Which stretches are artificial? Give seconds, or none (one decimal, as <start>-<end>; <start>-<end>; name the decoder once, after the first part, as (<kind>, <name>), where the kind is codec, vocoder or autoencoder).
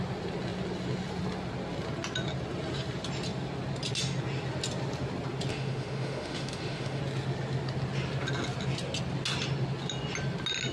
5.5-7.0 (autoencoder, DAC-VAE)